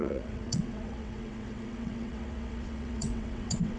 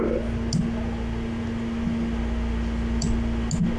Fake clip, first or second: first